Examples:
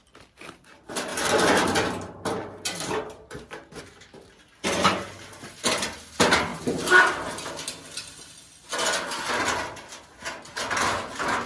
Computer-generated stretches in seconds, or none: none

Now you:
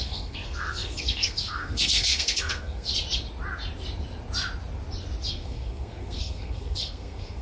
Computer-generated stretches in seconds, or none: 0.0-2.9 (codec, SNAC); 5.3-7.4

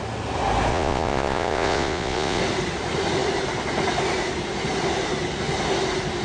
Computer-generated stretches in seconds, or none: 0.7-2.4 (vocoder, Vocos)